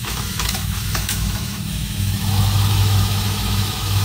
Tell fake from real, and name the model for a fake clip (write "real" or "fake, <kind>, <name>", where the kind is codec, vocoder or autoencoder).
fake, autoencoder, DAC-VAE